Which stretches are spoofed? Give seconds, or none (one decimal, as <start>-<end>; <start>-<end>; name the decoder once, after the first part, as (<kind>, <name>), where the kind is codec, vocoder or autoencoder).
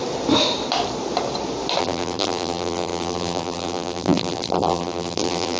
1.8-5.6 (vocoder, BigVGAN v2)